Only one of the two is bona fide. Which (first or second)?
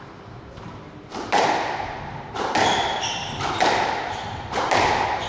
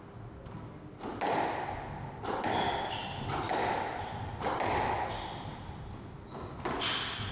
second